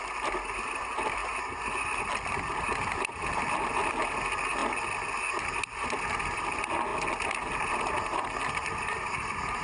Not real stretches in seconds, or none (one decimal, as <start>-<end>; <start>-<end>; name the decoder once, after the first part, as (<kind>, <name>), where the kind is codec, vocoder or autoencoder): none